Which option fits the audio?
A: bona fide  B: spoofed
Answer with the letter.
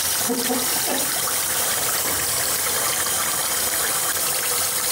A